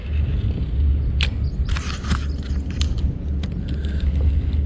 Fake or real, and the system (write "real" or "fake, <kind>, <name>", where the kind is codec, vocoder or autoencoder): real